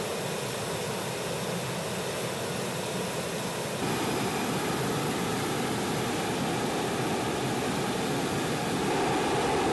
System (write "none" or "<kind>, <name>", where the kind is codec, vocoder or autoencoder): none